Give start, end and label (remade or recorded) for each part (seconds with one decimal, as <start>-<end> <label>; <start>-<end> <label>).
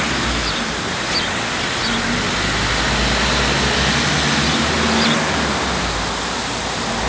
0.0-7.1 recorded